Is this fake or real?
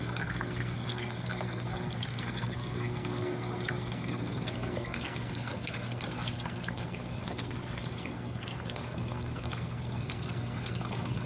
fake